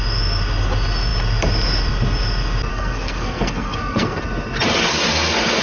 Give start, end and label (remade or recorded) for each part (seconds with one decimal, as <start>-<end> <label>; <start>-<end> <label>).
0.0-2.7 recorded; 2.7-4.2 remade; 4.2-5.6 recorded